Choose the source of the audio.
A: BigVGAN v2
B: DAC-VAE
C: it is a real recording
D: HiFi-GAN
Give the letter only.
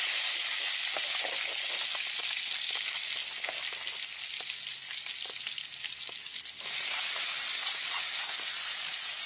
C